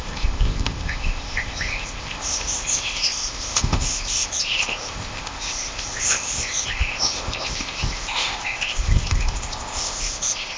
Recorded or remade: remade